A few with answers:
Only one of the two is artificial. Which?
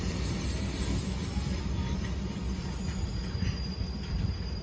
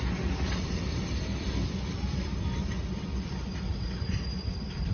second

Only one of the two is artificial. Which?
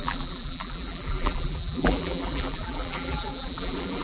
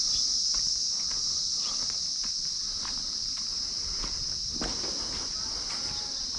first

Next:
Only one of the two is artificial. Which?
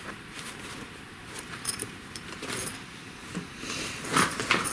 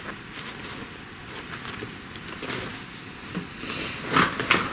first